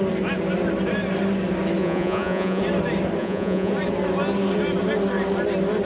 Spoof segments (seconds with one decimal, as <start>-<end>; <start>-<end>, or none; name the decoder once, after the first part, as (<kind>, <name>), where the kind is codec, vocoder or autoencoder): 1.8-2.6 (vocoder, Vocos); 3.2-3.7